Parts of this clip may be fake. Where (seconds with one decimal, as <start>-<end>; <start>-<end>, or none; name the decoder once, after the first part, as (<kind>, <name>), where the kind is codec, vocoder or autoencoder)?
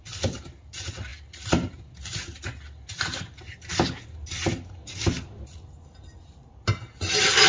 none